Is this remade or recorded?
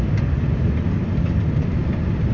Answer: recorded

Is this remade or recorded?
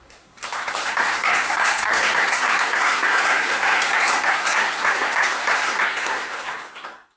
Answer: remade